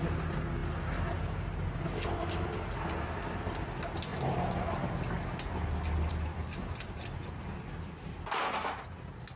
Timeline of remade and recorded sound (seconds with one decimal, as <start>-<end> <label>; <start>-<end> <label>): 0.0-9.4 recorded